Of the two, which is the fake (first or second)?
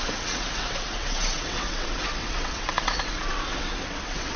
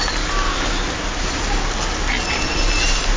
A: first